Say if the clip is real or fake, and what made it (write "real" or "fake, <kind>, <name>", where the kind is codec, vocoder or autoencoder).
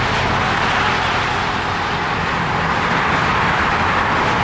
real